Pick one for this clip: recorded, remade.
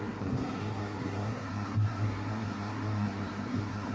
remade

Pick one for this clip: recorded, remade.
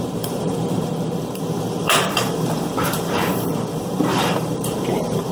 remade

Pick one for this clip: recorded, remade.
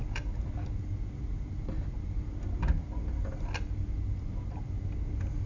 recorded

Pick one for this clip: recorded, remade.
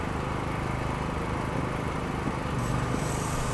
recorded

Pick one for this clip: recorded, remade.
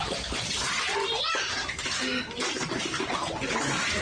recorded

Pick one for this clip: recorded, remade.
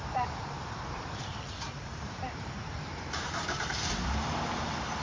remade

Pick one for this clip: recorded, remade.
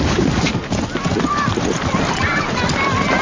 recorded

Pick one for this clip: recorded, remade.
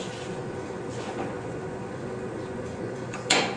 remade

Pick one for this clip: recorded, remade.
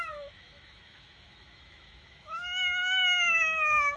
remade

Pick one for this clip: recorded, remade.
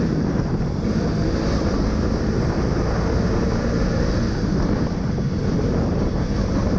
remade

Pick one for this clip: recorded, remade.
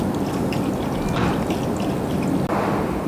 recorded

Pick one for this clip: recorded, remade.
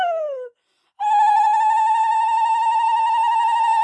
recorded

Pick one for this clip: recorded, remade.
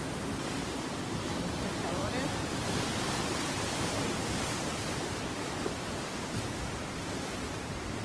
remade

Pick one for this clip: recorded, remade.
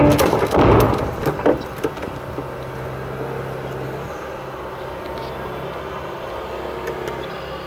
recorded